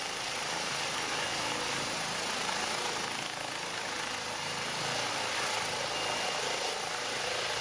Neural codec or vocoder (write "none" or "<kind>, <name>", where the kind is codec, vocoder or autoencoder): none